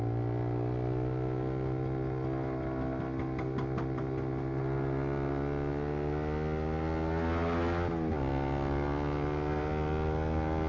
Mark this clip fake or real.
real